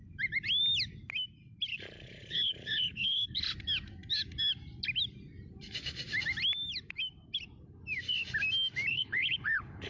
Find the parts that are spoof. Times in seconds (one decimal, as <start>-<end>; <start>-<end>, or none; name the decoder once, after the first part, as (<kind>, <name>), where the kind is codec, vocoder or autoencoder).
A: 1.7-3.4 (codec, HILCodec); 8.9-9.9